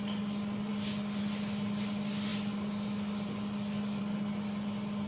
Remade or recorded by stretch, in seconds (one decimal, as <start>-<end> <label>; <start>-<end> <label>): 0.0-5.1 recorded